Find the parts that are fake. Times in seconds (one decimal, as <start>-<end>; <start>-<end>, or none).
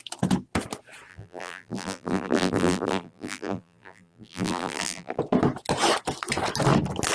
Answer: 1.1-5.2